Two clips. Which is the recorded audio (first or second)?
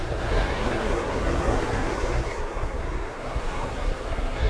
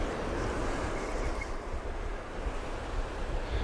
second